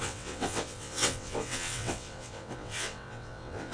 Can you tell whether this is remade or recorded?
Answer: remade